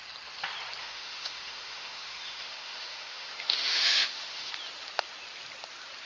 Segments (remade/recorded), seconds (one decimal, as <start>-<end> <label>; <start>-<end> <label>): 0.0-0.8 recorded; 0.8-4.5 remade; 4.5-6.1 recorded